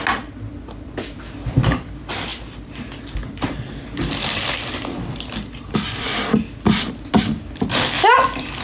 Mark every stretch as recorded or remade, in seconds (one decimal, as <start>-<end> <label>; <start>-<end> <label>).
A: 0.0-8.6 recorded